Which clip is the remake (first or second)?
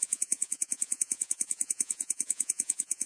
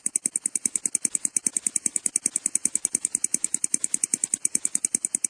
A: first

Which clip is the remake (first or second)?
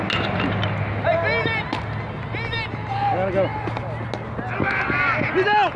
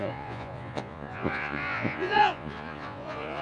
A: second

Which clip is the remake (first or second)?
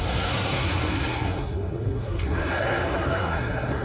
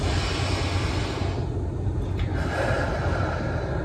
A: first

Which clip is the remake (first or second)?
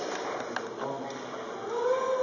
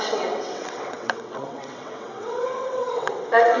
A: second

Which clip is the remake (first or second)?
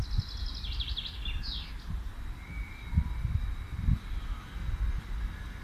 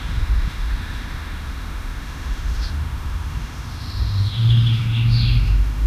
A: second